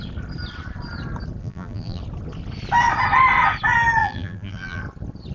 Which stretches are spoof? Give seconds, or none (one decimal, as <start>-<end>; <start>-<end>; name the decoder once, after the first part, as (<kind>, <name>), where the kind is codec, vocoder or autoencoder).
1.4-2.0 (vocoder, BigVGAN v2); 4.0-4.8